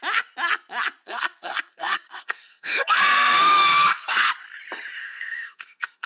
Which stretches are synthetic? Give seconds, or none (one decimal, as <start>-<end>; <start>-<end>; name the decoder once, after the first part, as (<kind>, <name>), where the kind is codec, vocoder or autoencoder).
1.0-4.3 (codec, SNAC); 5.0-6.1